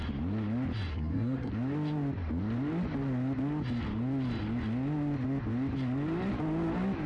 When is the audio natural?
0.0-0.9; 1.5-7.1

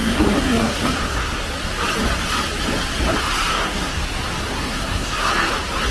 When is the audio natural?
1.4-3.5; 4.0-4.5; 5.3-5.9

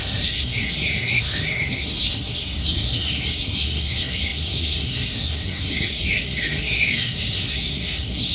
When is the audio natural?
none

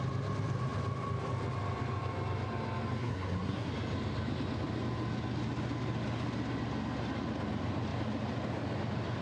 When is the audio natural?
0.0-3.0; 3.7-9.2

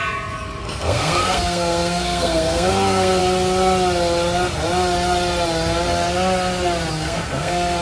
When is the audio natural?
0.0-0.6; 3.2-6.9